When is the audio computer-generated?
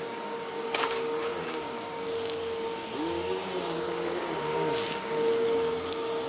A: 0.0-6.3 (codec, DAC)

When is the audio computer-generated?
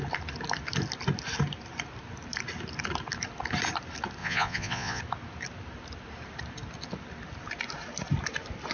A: 4.2-5.0 (vocoder, Vocos)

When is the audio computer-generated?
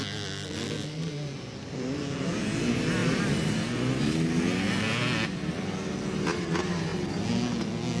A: 3.0-3.5 (vocoder, BigVGAN v2)